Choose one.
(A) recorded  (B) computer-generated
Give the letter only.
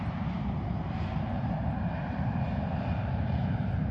B